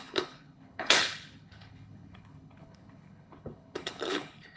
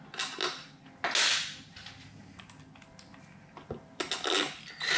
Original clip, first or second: second